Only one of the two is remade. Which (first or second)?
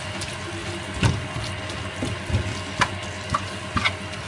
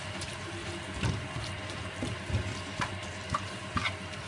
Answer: second